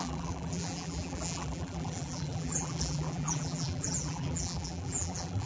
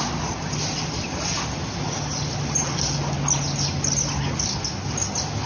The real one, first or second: second